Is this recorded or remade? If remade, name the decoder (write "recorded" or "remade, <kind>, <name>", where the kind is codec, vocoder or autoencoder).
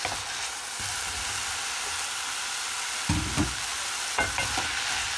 recorded